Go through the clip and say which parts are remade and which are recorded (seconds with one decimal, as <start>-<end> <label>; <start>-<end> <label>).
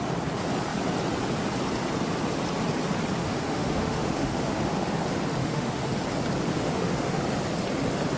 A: 0.0-3.2 recorded; 3.2-5.0 remade; 5.0-5.4 recorded; 5.4-5.9 remade; 5.9-6.5 recorded; 6.5-7.2 remade; 7.2-8.2 recorded